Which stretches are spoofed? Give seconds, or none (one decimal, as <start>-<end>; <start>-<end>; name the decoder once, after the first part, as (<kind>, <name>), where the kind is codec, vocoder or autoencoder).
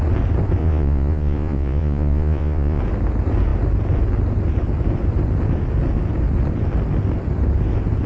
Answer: 0.6-2.8 (vocoder, Vocos)